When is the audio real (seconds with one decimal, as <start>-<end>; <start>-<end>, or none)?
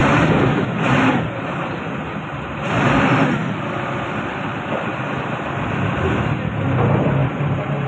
0.0-3.4; 4.9-7.2